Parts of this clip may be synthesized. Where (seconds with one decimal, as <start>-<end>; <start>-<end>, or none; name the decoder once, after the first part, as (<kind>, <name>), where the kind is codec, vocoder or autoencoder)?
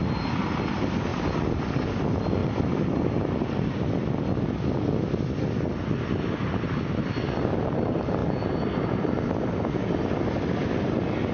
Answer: 2.4-4.2 (vocoder, BigVGAN v2)